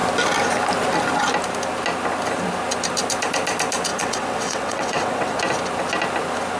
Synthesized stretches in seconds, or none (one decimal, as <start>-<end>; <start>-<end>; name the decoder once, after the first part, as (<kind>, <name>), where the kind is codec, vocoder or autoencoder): 3.9-5.4 (vocoder, WaveNeXt)